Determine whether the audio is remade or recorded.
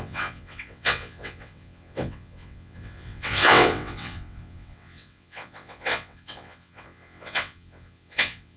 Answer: remade